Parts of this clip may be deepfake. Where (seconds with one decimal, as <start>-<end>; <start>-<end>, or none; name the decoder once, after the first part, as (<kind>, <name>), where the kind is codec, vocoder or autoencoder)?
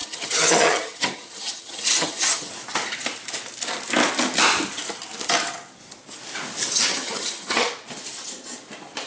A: 0.0-2.5 (vocoder, HiFi-GAN); 6.9-7.7